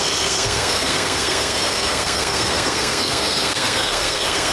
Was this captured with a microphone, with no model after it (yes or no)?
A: no